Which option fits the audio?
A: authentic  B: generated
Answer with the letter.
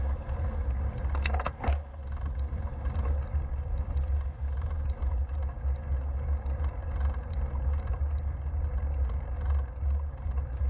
B